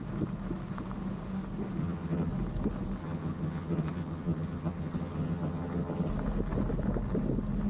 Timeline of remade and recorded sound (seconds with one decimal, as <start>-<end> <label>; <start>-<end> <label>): 0.0-1.8 recorded; 1.8-2.3 remade; 2.3-3.0 recorded; 3.0-6.1 remade; 6.1-7.7 recorded